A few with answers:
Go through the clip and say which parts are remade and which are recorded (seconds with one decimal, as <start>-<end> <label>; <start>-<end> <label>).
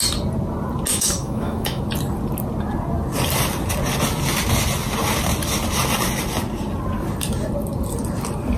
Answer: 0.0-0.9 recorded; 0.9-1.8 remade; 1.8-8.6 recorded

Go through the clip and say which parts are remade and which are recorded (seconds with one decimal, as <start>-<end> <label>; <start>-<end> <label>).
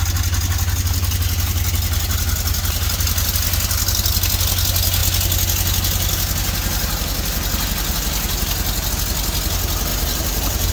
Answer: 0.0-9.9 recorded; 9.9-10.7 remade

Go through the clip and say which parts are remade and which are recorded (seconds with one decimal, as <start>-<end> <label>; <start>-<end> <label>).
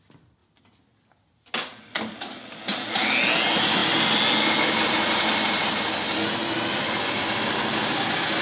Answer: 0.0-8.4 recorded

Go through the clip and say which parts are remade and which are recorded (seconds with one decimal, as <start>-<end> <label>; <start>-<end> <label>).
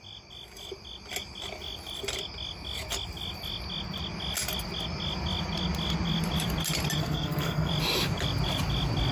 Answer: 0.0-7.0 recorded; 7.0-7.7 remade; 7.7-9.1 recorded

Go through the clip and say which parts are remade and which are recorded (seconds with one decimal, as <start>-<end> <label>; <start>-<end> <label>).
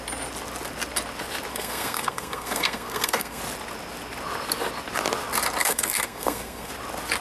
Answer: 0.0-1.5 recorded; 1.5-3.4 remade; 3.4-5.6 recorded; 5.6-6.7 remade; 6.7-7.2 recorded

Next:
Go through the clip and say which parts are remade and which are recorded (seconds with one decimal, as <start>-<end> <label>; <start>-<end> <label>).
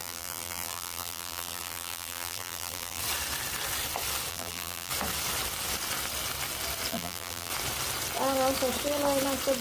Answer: 0.0-3.0 remade; 3.0-4.3 recorded; 4.3-4.9 remade; 4.9-6.9 recorded; 6.9-7.5 remade; 7.5-9.6 recorded